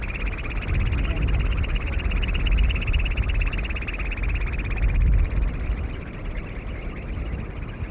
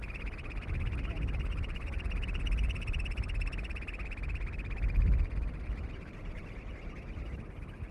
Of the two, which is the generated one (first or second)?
second